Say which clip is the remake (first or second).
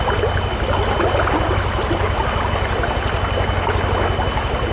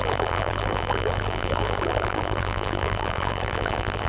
second